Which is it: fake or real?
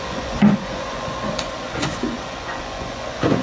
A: fake